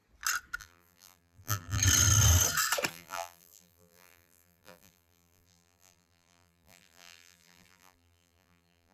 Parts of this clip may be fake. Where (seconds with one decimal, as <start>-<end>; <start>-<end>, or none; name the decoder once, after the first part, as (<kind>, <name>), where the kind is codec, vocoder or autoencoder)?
0.6-1.8 (vocoder, BigVGAN v2); 2.9-8.9